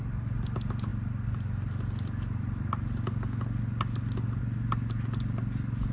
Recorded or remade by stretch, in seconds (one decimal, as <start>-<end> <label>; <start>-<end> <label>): 0.0-5.9 recorded